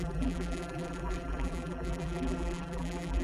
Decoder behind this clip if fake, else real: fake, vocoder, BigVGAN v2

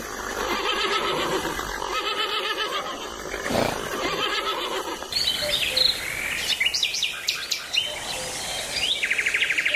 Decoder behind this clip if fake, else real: real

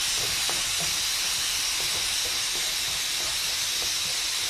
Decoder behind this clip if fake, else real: real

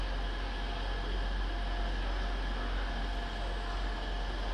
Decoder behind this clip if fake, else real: real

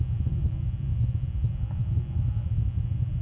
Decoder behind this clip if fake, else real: real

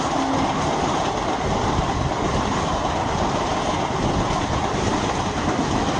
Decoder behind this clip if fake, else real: real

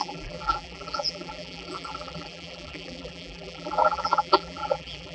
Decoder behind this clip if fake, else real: fake, vocoder, BigVGAN v2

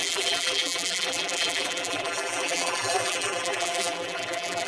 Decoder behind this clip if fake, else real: fake, vocoder, BigVGAN v2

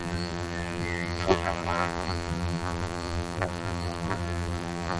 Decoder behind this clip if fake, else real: fake, vocoder, BigVGAN v2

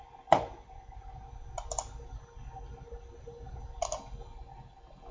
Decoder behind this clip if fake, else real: real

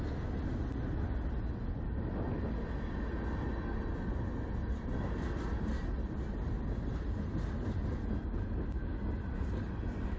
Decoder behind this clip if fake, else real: real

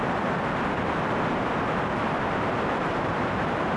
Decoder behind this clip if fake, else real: real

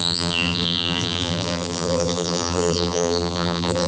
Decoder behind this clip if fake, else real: fake, vocoder, BigVGAN v2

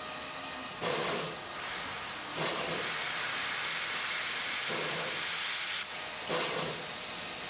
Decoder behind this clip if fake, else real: real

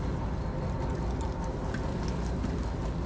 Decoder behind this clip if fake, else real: real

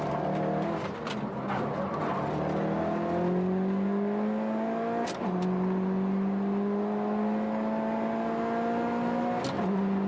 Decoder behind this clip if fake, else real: real